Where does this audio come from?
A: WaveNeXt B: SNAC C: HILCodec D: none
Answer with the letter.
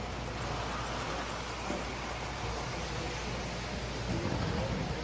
D